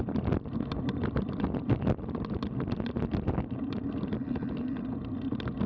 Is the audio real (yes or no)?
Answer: yes